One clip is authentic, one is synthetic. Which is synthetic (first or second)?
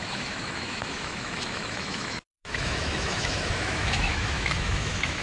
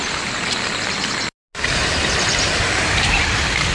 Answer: first